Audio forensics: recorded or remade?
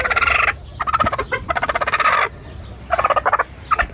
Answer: recorded